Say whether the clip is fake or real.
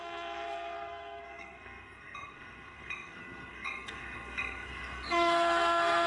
fake